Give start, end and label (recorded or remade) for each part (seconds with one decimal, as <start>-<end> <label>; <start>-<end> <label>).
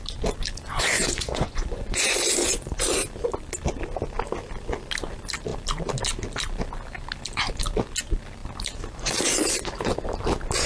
0.0-0.9 recorded; 0.9-2.8 remade; 2.8-10.7 recorded